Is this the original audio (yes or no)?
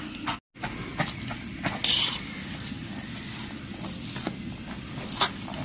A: yes